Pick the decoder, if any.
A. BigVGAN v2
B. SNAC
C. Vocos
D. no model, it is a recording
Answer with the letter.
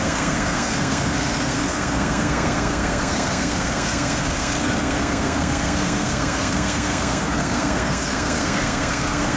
B